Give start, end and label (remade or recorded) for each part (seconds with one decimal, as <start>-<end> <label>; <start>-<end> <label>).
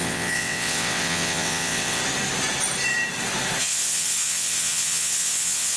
0.0-2.0 remade; 2.0-3.6 recorded; 3.6-5.8 remade